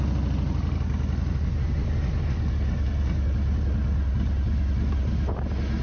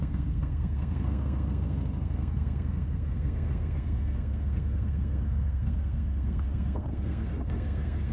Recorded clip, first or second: first